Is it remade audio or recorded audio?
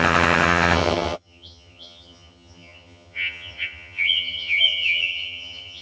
remade